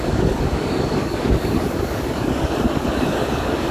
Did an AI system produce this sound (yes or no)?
yes